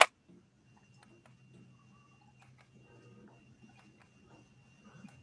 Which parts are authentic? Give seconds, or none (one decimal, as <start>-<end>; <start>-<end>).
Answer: 0.0-5.2